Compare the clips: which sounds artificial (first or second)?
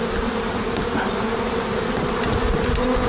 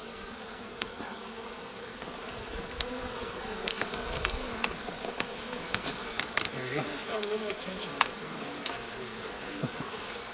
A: second